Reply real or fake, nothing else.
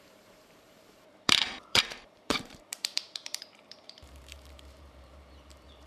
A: fake